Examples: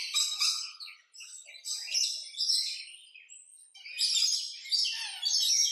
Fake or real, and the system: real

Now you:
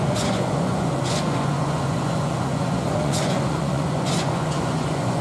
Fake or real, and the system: fake, vocoder, Vocos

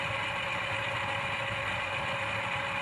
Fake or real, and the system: real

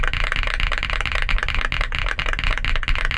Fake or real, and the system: real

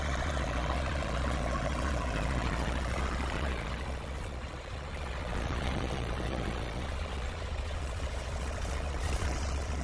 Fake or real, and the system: fake, vocoder, Vocos